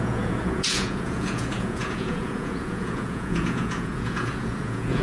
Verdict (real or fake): fake